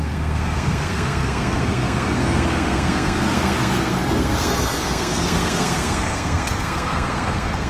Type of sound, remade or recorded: remade